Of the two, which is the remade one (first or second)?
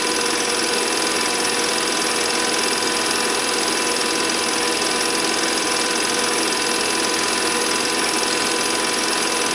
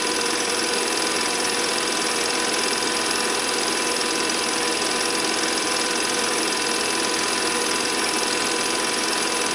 second